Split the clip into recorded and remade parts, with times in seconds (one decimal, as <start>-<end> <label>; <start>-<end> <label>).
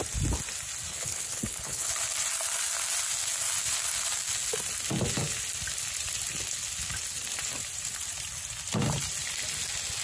0.0-0.9 recorded; 0.9-1.9 remade; 1.9-10.0 recorded